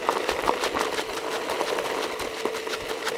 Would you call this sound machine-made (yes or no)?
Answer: no